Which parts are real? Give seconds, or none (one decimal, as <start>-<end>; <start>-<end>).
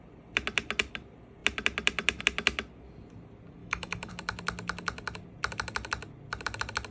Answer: 0.0-3.6; 4.1-6.9